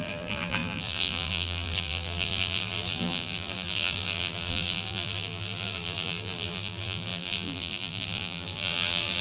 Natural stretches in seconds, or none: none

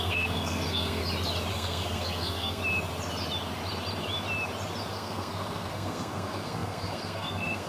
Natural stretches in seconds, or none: 1.0-1.5; 2.6-4.9

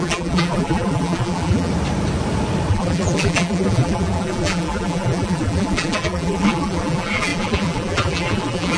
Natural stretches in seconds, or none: 1.7-2.7

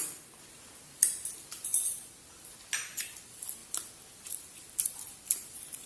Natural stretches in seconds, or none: 3.6-4.1